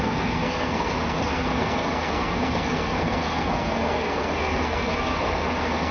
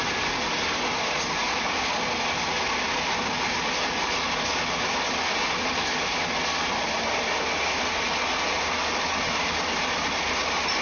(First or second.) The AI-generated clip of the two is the first